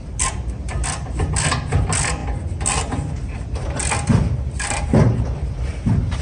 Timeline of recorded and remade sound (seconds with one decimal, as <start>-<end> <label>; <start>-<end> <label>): 0.0-6.2 recorded